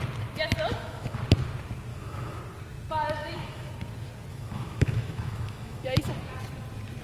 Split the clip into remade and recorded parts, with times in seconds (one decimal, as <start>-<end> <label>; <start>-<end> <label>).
0.0-0.7 recorded; 0.7-1.2 remade; 1.2-1.9 recorded; 1.9-2.4 remade; 2.4-3.2 recorded; 3.2-3.7 remade; 3.7-4.3 recorded; 4.3-6.1 remade; 6.1-7.0 recorded